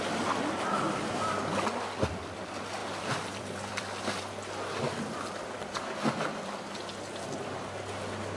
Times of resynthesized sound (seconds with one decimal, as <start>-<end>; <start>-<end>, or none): 2.8-4.2